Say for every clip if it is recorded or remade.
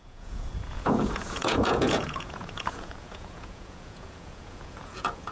remade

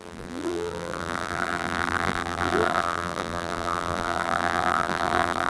remade